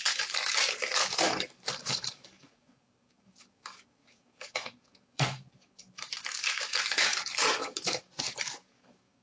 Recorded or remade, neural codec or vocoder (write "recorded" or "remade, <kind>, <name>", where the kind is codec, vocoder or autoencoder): remade, codec, DAC